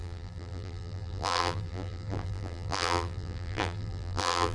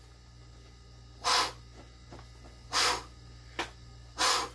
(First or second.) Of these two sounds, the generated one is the first